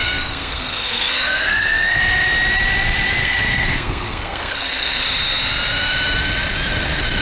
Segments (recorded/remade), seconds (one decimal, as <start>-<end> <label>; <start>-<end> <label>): 0.0-2.0 remade; 2.0-3.2 recorded; 3.2-5.0 remade; 5.0-7.2 recorded